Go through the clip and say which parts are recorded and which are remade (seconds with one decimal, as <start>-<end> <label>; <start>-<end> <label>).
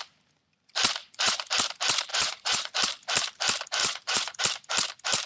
0.0-1.0 recorded; 1.0-1.5 remade; 1.5-2.1 recorded; 2.1-2.7 remade; 2.7-3.8 recorded; 3.8-4.4 remade; 4.4-5.3 recorded